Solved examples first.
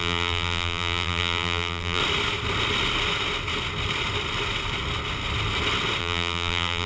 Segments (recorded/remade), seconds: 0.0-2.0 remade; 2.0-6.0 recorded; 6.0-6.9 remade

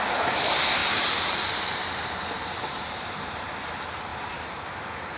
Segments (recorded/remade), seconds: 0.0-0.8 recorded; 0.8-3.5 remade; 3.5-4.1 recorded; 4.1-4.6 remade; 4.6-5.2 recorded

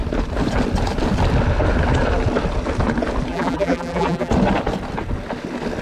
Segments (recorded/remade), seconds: 0.0-3.3 recorded; 3.3-4.3 remade; 4.3-5.8 recorded

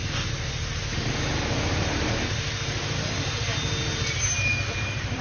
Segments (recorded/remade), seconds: 0.0-3.1 recorded; 3.1-3.5 remade; 3.5-4.8 recorded; 4.8-5.2 remade

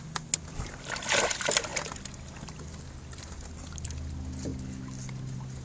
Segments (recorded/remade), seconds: 0.0-5.6 recorded